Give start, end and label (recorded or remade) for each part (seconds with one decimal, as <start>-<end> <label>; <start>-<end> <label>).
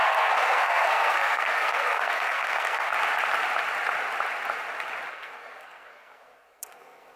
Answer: 0.0-2.9 remade; 2.9-5.1 recorded; 5.1-7.2 remade